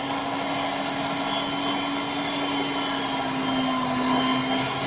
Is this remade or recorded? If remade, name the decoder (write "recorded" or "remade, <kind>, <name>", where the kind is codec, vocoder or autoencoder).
recorded